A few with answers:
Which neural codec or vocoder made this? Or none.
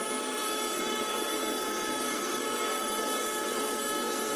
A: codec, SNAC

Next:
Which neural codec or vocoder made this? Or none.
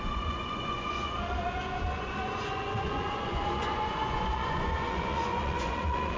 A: vocoder, Vocos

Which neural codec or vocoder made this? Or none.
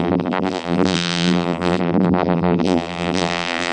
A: vocoder, BigVGAN v2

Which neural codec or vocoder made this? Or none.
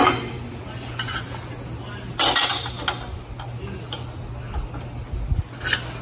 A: none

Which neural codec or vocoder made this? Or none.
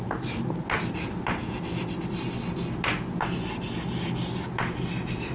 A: none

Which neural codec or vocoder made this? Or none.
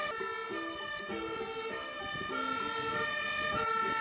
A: none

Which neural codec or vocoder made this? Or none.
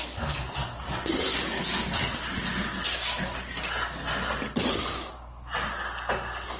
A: none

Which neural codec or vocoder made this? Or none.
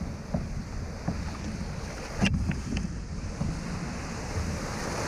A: none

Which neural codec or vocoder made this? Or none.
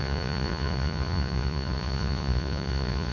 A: vocoder, Vocos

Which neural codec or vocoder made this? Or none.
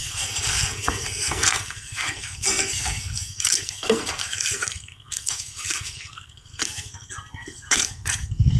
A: codec, SNAC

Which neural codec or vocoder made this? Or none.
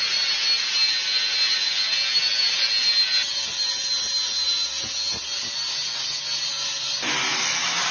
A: none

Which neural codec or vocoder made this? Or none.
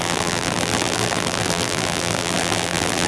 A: vocoder, BigVGAN v2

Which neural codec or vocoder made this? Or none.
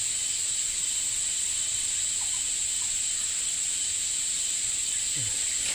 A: vocoder, BigVGAN v2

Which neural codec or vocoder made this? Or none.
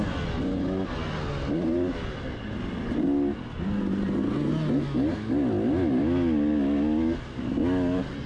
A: none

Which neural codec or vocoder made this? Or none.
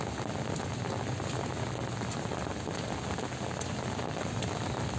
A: none